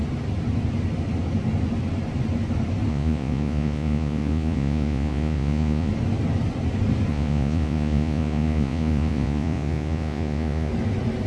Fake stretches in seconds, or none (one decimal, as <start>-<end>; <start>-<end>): 2.9-5.9; 7.1-10.7